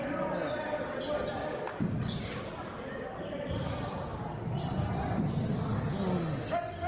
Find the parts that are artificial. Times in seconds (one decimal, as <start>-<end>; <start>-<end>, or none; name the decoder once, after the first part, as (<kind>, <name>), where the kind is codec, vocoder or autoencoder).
1.4-2.4 (codec, DAC)